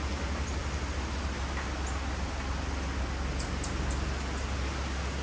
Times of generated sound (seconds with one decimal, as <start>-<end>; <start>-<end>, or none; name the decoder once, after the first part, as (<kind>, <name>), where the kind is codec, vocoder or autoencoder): none

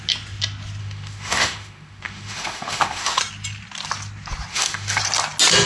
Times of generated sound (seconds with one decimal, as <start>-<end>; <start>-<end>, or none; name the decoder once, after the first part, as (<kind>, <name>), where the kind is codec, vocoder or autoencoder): 0.8-3.2 (autoencoder, DAC-VAE); 4.5-5.0

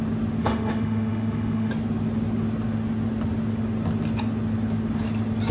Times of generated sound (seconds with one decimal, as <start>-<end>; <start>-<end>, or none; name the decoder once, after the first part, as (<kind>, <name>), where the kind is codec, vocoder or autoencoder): 0.4-1.7 (autoencoder, DAC-VAE)